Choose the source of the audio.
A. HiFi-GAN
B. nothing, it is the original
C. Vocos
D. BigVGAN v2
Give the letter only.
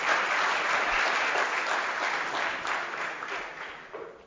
B